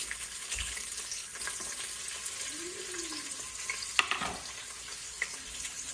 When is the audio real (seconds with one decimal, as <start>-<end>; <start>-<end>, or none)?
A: 1.3-4.8

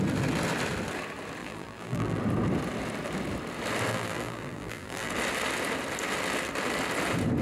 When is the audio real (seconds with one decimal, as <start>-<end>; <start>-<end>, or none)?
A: 0.0-1.4; 2.2-3.9; 5.1-7.4

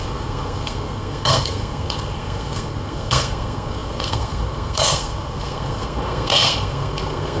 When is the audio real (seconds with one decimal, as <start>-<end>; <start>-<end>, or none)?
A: none

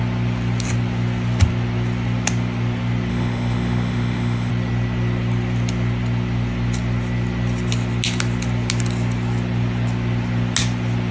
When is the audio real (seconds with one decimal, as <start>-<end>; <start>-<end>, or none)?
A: 0.0-3.1; 4.5-11.1

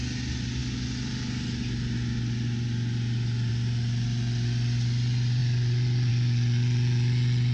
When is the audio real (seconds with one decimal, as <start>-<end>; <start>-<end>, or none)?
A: 0.0-7.5

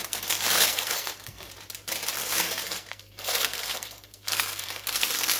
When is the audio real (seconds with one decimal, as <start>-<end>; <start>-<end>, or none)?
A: 1.5-2.2

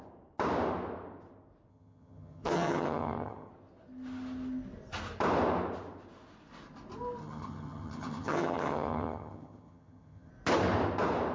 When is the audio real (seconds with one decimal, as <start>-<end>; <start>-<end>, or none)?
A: 0.0-1.7; 3.5-7.2; 10.3-11.3

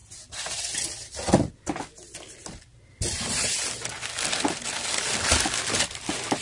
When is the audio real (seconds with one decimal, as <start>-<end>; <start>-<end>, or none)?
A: 0.0-6.4